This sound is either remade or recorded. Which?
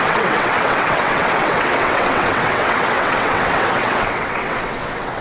remade